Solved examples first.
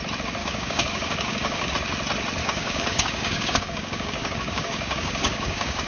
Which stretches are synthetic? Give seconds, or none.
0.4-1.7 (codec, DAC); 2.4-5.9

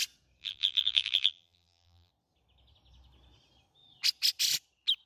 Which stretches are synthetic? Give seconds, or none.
0.4-2.1 (vocoder, BigVGAN v2)

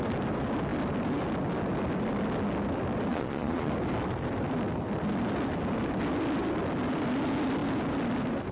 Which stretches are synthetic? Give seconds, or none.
3.1-3.7 (vocoder, Vocos)

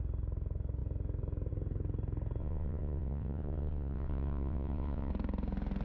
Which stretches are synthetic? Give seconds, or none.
2.4-5.1 (vocoder, WaveNeXt)

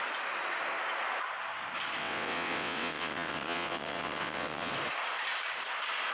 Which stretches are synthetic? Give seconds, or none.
2.0-4.7 (vocoder, WaveNeXt)